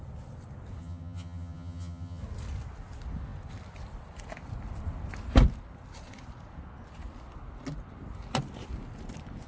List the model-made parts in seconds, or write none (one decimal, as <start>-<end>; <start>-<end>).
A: 0.8-2.2